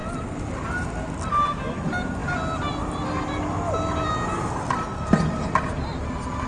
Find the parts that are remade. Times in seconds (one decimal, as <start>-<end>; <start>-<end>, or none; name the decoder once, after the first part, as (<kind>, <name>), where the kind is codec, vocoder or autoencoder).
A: none